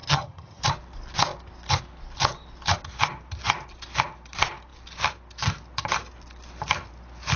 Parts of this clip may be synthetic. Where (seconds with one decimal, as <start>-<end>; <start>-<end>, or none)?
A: 0.0-0.6